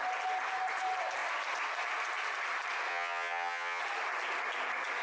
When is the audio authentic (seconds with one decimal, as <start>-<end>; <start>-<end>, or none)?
0.0-2.9; 3.8-5.0